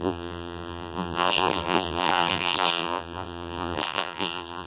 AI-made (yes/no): yes